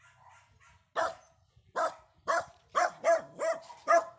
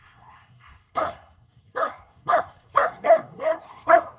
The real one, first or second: first